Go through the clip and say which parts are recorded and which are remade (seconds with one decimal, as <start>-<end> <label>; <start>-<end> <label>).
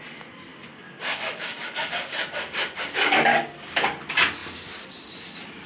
0.0-0.5 recorded; 0.5-3.9 remade; 3.9-5.7 recorded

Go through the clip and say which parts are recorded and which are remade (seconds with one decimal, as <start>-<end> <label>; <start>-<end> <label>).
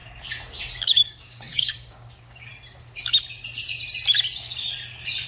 0.0-0.8 recorded; 0.8-2.5 remade; 2.5-5.3 recorded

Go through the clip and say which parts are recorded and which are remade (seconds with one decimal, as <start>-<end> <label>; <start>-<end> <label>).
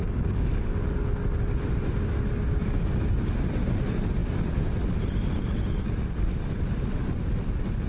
0.0-0.8 remade; 0.8-7.9 recorded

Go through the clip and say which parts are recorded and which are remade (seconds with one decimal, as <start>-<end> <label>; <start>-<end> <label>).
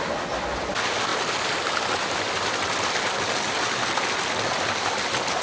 0.0-5.4 recorded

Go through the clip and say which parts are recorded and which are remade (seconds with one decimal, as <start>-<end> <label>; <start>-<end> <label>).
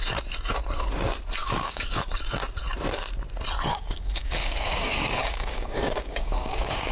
0.0-1.4 recorded; 1.4-2.0 remade; 2.0-3.7 recorded; 3.7-6.9 remade